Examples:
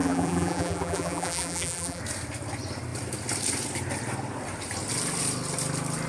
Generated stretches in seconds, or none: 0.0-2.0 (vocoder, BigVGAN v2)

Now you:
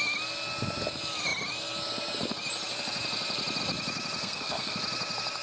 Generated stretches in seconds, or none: 4.2-4.8 (codec, SNAC)

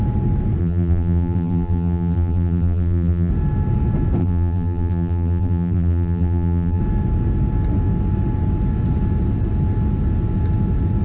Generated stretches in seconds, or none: 0.6-3.3 (vocoder, BigVGAN v2); 4.2-6.8

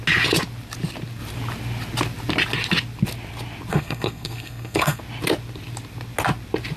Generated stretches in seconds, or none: 3.7-5.0 (codec, SNAC)

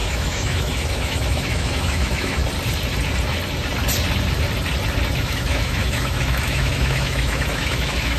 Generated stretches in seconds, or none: 0.0-2.4 (autoencoder, DAC-VAE); 5.2-8.2